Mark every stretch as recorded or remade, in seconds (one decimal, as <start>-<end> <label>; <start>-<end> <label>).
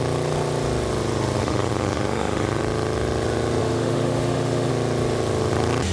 0.0-1.4 recorded; 1.4-2.6 remade; 2.6-3.6 recorded; 3.6-4.7 remade; 4.7-5.9 recorded